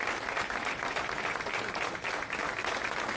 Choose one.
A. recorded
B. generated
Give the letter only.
A